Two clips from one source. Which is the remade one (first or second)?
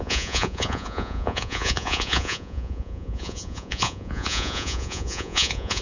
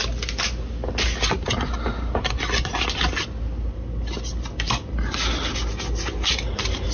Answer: first